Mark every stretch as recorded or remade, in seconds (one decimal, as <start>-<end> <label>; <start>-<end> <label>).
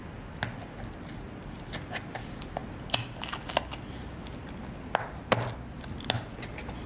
0.0-6.9 recorded